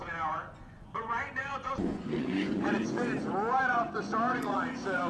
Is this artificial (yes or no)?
yes